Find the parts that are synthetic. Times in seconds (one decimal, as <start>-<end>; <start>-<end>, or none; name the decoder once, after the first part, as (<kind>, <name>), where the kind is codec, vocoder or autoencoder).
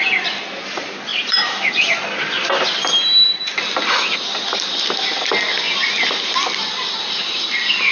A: 1.1-2.0 (vocoder, BigVGAN v2)